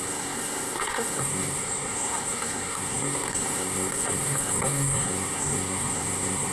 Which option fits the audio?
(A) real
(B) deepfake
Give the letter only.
B